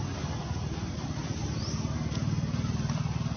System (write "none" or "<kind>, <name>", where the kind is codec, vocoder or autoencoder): none